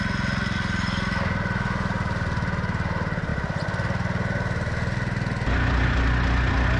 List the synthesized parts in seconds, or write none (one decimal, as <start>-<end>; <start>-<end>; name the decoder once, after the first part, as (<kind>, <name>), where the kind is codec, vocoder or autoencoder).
none